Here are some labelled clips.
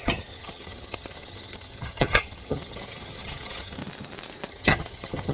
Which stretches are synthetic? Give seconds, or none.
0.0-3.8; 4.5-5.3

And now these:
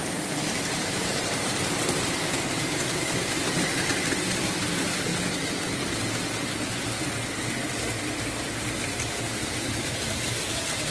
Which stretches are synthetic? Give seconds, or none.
0.0-5.1; 9.4-10.9

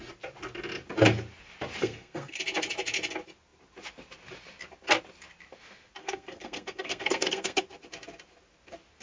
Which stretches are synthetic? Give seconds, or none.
1.8-2.4; 6.0-7.6